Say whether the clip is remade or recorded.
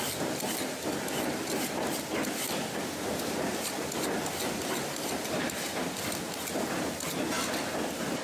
recorded